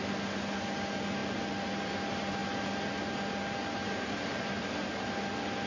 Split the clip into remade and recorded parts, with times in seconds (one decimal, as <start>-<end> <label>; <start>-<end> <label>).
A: 0.0-5.7 recorded